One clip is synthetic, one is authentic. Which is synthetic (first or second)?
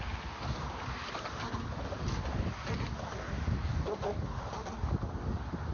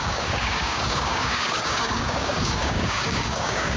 second